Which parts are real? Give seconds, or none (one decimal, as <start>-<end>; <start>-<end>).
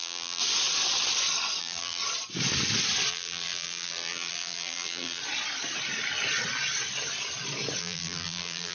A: 0.4-1.6; 2.0-3.1; 5.2-7.8